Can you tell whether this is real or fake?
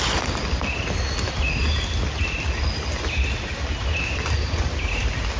real